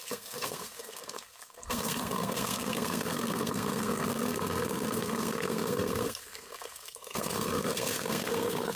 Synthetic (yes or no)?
yes